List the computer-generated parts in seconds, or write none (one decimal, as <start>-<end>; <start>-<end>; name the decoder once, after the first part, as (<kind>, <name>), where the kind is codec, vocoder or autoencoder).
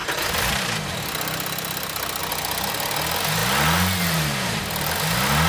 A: 0.0-0.5 (vocoder, BigVGAN v2)